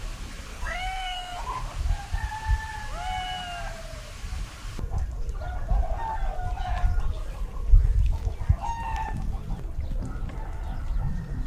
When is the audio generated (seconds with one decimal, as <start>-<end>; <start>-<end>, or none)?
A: 0.5-1.4